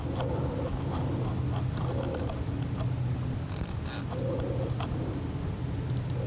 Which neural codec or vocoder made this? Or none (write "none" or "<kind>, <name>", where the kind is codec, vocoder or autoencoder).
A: none